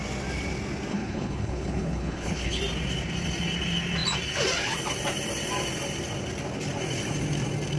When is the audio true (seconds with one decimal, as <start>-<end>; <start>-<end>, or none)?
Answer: 0.0-0.9; 2.6-7.8